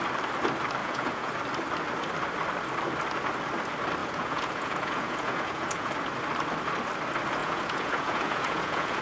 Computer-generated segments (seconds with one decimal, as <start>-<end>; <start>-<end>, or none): 0.8-1.3; 4.0-5.9; 7.4-9.0